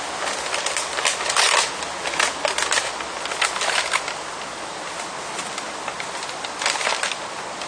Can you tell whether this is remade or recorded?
recorded